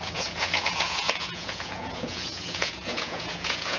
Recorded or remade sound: remade